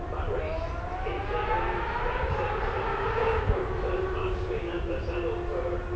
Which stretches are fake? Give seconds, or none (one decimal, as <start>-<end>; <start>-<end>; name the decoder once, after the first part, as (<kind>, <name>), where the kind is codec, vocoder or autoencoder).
2.9-3.7 (codec, DAC); 4.2-4.8